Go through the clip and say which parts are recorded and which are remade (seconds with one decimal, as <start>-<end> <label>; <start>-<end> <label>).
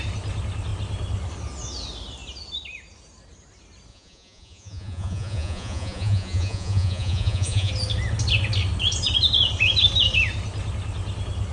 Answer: 0.0-3.9 recorded; 3.9-7.7 remade; 7.7-11.5 recorded